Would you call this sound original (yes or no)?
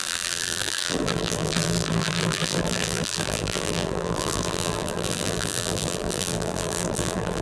no